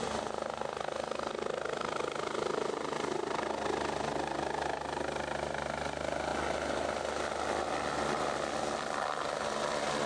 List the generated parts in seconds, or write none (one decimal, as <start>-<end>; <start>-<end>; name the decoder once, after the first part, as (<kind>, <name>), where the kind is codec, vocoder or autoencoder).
none